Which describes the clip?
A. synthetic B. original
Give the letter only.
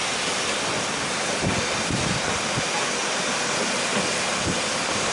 A